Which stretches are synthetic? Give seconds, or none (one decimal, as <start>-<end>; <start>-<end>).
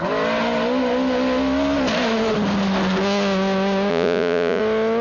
3.9-4.6